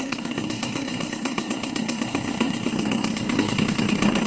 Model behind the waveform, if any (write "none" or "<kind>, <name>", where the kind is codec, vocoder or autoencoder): codec, SNAC